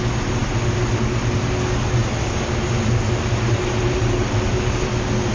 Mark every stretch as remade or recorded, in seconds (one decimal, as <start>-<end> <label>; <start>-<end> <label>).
0.0-5.3 recorded